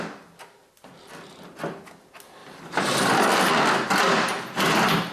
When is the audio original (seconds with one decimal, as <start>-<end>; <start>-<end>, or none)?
0.0-2.4; 3.5-5.1